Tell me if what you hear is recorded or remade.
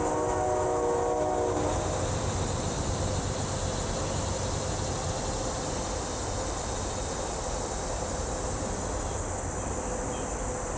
recorded